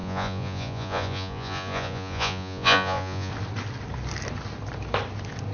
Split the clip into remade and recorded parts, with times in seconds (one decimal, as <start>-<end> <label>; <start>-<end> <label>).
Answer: 0.0-3.3 remade; 3.3-5.5 recorded